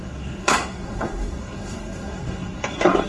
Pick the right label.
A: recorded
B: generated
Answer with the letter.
B